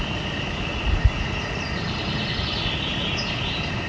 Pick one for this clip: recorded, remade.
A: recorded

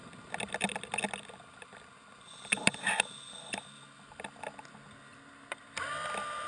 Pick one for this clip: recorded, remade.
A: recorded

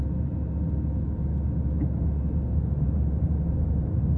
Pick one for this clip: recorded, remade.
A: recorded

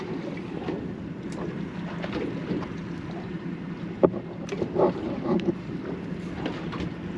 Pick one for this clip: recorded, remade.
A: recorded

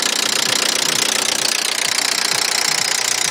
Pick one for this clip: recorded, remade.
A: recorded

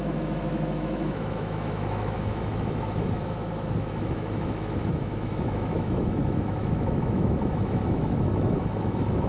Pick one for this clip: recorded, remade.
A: remade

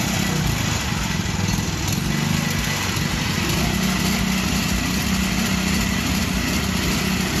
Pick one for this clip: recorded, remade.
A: recorded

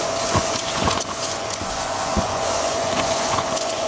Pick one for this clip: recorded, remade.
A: remade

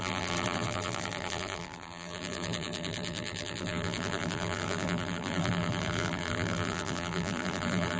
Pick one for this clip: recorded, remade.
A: remade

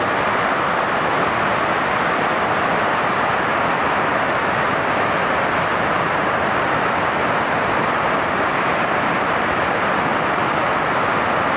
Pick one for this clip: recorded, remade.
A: recorded